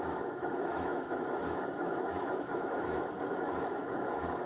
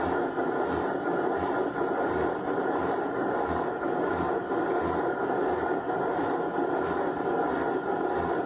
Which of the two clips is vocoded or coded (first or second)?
first